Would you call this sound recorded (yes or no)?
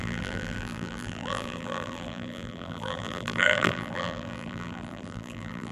no